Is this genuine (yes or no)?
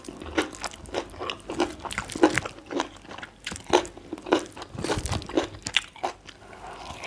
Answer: yes